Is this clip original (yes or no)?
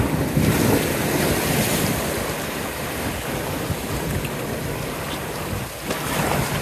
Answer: yes